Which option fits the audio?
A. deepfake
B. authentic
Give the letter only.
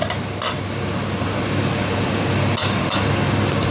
B